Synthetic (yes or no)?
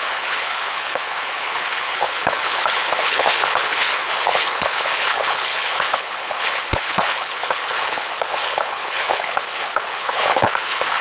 yes